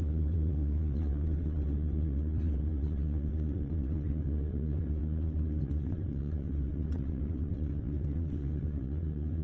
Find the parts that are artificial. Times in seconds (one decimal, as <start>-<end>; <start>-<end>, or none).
0.0-9.4